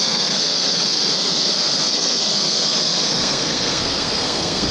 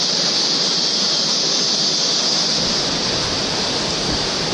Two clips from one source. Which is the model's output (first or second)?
first